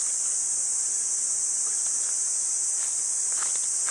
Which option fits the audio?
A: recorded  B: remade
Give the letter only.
A